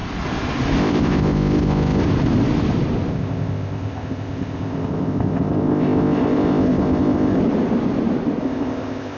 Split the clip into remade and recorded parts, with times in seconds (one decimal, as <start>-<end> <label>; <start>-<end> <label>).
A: 0.0-0.8 recorded; 0.8-2.0 remade; 2.0-3.1 recorded; 3.1-7.4 remade; 7.4-8.4 recorded; 8.4-9.2 remade